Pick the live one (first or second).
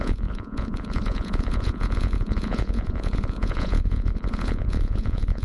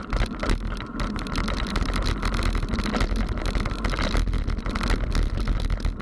second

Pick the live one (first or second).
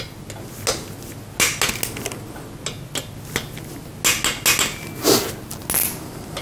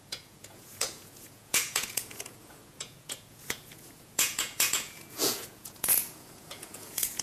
first